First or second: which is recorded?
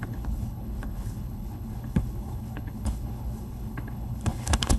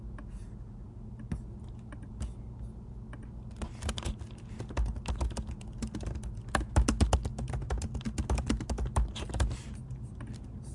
second